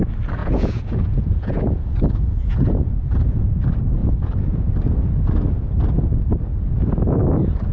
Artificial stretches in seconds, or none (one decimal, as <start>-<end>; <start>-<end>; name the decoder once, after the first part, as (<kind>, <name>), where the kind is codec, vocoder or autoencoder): 0.4-3.6 (vocoder, Vocos); 4.0-4.7